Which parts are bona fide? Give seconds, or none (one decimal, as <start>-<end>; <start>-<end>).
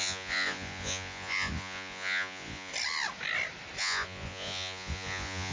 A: 2.7-3.8